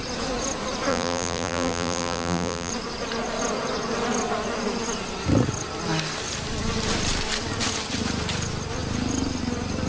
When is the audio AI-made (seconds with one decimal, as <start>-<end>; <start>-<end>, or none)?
0.9-2.7